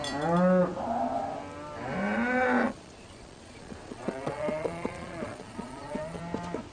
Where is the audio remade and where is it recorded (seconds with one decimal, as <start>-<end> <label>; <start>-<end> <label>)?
0.0-2.6 recorded; 2.6-6.2 remade; 6.2-6.7 recorded